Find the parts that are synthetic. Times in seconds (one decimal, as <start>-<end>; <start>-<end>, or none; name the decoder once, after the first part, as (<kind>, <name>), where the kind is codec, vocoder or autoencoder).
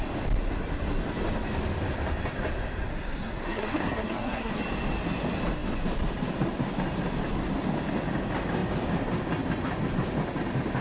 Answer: 2.9-4.5 (codec, SNAC)